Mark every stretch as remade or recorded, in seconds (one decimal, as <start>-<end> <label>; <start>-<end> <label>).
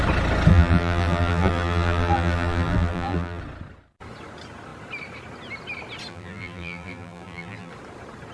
0.0-0.5 recorded; 0.5-3.4 remade; 3.4-6.1 recorded; 6.1-7.7 remade; 7.7-8.3 recorded